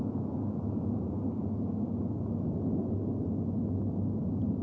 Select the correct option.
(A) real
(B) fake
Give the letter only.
A